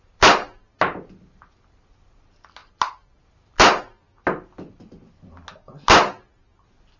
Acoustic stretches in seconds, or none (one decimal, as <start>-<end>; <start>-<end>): 0.0-7.0